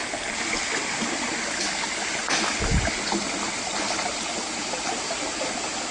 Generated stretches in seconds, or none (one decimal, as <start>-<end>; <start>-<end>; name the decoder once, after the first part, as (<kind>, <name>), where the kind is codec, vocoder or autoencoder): none